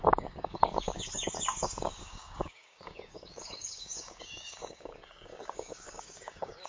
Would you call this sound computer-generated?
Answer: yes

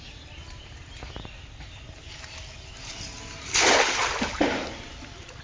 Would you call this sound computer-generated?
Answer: no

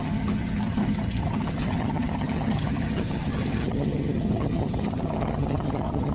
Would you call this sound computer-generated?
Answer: yes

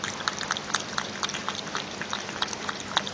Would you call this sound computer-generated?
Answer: no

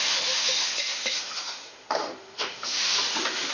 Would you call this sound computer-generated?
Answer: yes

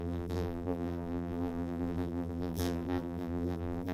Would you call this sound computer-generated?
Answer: yes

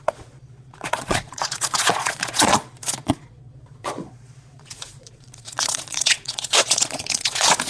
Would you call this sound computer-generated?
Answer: yes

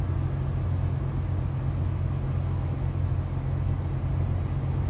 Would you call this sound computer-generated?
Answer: no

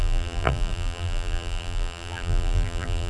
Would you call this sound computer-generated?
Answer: yes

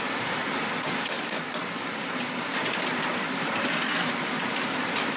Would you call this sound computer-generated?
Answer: yes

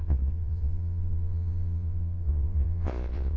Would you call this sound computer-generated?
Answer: yes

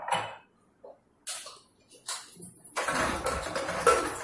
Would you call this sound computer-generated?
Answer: no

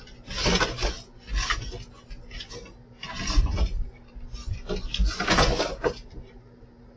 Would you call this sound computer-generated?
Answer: no